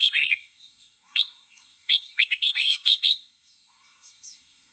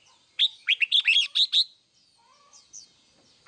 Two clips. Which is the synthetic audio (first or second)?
first